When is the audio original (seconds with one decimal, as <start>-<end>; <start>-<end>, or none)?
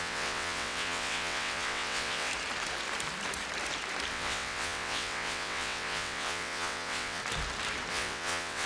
2.3-4.1; 7.2-7.9